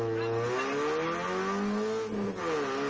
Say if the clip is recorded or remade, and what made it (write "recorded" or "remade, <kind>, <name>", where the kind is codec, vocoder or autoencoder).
recorded